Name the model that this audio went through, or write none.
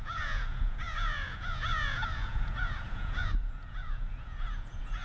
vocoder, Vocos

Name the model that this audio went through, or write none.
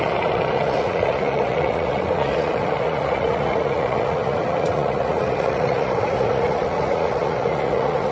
vocoder, Vocos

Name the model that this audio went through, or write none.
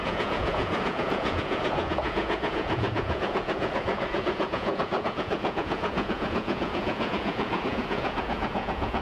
vocoder, Vocos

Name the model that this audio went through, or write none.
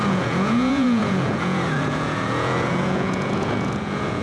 vocoder, Vocos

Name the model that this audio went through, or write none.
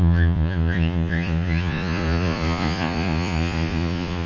vocoder, Vocos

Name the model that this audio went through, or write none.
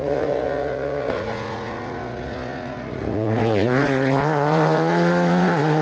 vocoder, Vocos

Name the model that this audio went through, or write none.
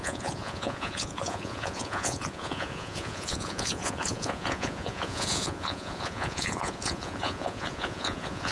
vocoder, Vocos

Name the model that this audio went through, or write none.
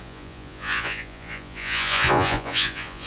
vocoder, Vocos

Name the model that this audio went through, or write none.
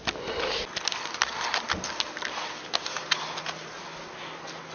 none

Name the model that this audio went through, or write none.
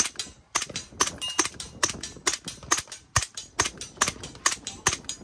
none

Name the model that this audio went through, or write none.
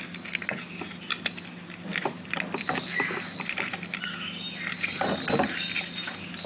none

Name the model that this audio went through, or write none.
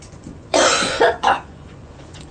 vocoder, Vocos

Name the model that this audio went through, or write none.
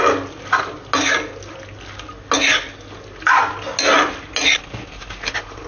none